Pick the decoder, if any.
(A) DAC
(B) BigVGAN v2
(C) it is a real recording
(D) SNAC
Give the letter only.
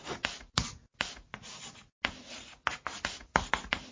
C